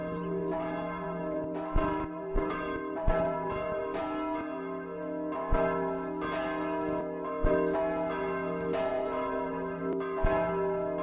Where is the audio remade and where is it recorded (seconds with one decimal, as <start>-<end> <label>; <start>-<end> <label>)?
0.0-4.0 remade; 4.0-8.9 recorded; 8.9-9.8 remade; 9.8-11.0 recorded